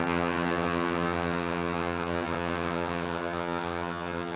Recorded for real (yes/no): no